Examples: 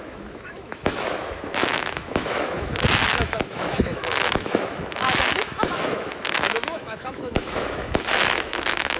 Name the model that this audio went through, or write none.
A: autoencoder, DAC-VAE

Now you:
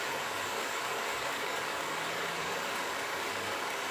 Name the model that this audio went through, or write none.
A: codec, DAC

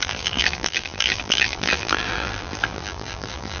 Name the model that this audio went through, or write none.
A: vocoder, BigVGAN v2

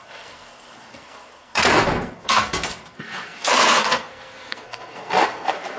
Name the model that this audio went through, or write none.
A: codec, SNAC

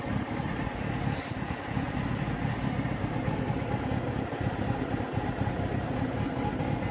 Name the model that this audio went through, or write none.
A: none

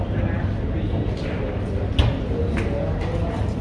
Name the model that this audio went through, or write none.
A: none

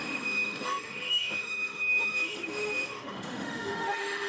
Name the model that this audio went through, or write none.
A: autoencoder, DAC-VAE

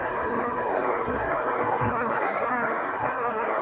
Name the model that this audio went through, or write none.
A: codec, SNAC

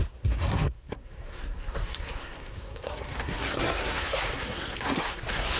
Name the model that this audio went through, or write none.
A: codec, SNAC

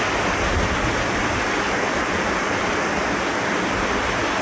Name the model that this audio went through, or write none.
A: none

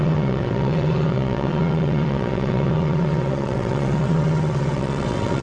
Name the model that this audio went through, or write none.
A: vocoder, WaveNeXt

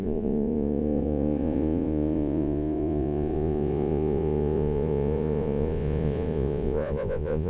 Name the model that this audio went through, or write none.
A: vocoder, Vocos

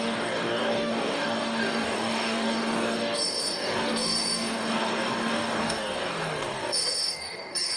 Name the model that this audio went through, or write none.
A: codec, DAC